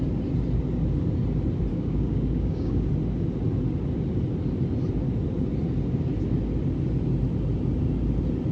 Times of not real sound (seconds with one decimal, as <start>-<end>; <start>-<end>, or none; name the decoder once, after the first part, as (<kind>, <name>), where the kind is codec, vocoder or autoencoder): 1.7-2.9 (codec, DAC)